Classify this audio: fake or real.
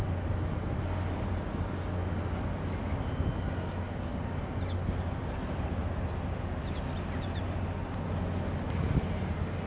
real